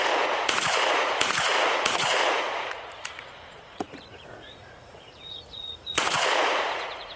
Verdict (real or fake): fake